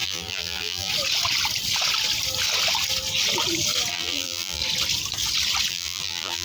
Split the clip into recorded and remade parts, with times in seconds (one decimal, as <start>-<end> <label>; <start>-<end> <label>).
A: 0.0-0.9 remade; 0.9-3.9 recorded; 3.9-4.6 remade; 4.6-5.7 recorded; 5.7-6.4 remade

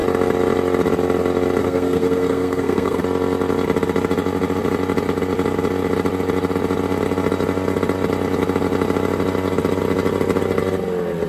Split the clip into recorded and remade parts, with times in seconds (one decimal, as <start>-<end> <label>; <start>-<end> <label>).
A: 0.0-1.6 recorded; 1.6-3.0 remade; 3.0-11.3 recorded

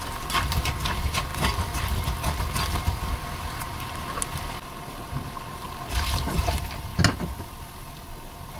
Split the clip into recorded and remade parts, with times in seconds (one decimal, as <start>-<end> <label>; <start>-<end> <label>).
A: 0.0-8.6 recorded

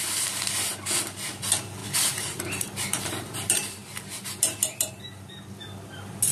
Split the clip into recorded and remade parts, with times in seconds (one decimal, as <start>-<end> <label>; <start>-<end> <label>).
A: 0.0-1.8 recorded; 1.8-5.6 remade; 5.6-6.3 recorded

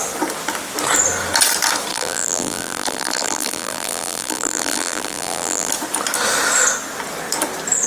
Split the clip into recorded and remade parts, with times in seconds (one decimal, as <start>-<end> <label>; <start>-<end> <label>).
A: 0.0-1.9 recorded; 1.9-5.7 remade; 5.7-7.9 recorded

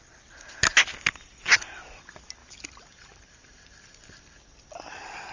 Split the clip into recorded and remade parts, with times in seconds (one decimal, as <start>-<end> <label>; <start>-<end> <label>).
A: 0.0-2.4 recorded; 2.4-4.2 remade; 4.2-5.3 recorded